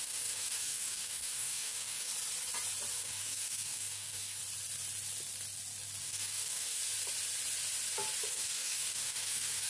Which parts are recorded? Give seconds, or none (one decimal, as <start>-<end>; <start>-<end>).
2.1-2.9; 4.4-6.0; 6.8-8.3